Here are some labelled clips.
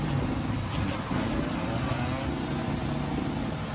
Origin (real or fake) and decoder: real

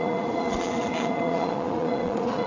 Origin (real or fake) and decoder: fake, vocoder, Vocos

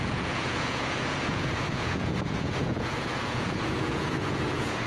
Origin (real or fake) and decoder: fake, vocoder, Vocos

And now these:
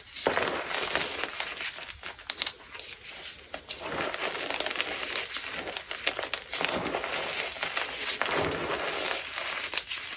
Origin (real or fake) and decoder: real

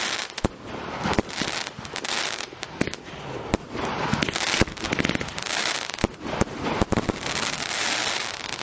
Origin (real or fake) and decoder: real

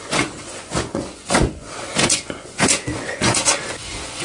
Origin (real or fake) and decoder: fake, vocoder, Vocos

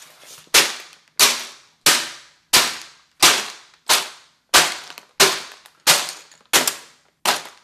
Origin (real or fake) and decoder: real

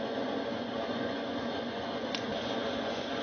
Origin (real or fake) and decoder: fake, vocoder, Vocos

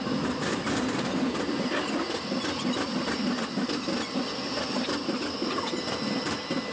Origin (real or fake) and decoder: real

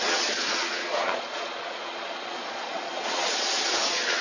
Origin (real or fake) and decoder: fake, vocoder, Vocos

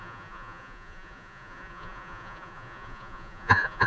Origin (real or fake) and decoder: fake, vocoder, Vocos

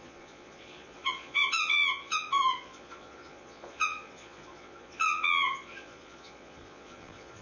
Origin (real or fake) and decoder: fake, vocoder, Vocos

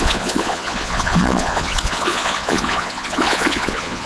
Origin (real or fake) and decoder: fake, vocoder, Vocos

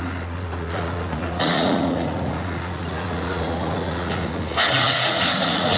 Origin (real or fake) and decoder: fake, vocoder, Vocos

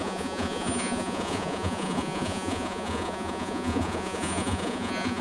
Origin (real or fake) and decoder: fake, vocoder, Vocos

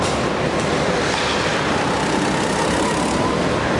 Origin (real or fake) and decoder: real